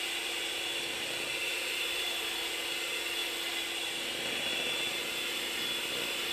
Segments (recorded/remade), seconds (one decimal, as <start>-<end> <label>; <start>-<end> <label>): 0.0-1.4 recorded; 1.4-2.1 remade; 2.1-6.3 recorded

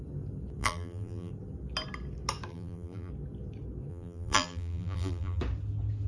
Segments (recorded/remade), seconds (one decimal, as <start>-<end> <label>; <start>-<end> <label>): 0.0-0.6 recorded; 0.6-1.3 remade; 1.3-2.5 recorded; 2.5-3.1 remade; 3.1-3.9 recorded; 3.9-5.4 remade; 5.4-6.1 recorded

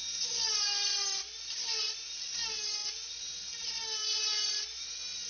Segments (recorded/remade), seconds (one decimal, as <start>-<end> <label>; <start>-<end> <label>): 0.0-5.3 recorded

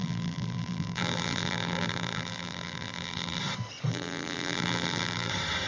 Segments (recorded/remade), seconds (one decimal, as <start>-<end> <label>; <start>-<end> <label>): 0.0-3.4 remade; 3.4-3.9 recorded; 3.9-5.3 remade; 5.3-5.7 recorded

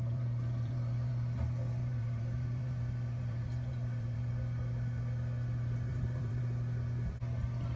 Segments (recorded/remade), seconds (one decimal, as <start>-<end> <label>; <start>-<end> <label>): 0.0-1.1 remade; 1.1-1.8 recorded; 1.8-4.3 remade; 4.3-5.9 recorded; 5.9-6.4 remade; 6.4-7.8 recorded

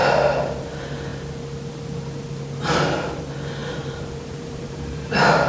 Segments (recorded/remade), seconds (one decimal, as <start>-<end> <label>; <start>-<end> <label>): 0.0-3.6 recorded; 3.6-5.5 remade

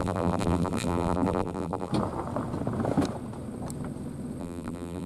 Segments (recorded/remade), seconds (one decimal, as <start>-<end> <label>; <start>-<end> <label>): 0.0-1.9 remade; 1.9-4.4 recorded; 4.4-5.1 remade

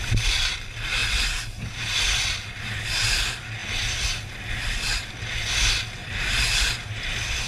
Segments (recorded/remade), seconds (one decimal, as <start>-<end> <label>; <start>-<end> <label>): 0.0-6.0 recorded; 6.0-6.9 remade; 6.9-7.5 recorded